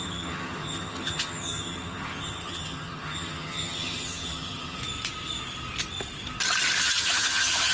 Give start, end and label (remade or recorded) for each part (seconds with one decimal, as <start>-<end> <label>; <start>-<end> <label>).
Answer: 0.0-4.8 remade; 4.8-6.8 recorded; 6.8-7.7 remade